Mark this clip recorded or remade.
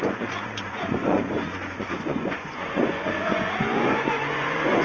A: remade